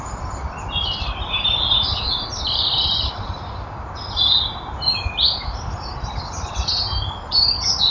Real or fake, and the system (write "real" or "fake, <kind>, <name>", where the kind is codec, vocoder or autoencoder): real